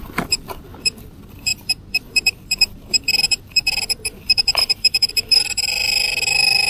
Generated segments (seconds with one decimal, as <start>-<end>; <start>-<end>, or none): 0.0-6.7